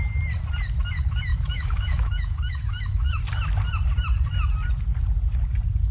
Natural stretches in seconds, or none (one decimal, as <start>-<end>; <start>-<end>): 0.0-1.3; 3.2-5.9